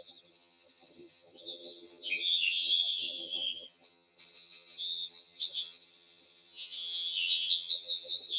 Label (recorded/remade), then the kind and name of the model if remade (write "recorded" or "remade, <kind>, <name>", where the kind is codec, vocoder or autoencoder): remade, vocoder, HiFi-GAN